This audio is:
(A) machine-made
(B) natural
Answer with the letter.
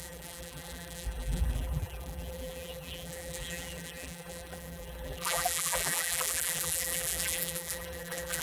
A